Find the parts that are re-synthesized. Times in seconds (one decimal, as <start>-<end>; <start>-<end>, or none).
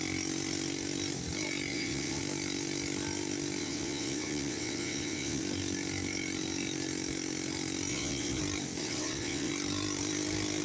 1.7-2.2; 3.6-5.4; 7.9-8.4; 8.8-9.5